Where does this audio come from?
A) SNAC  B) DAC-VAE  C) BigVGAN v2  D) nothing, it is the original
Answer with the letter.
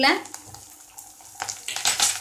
D